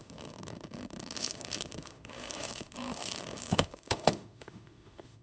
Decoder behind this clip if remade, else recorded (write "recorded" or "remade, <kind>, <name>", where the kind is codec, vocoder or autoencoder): remade, autoencoder, DAC-VAE